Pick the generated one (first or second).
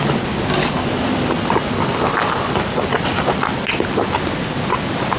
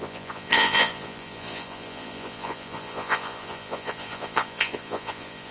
second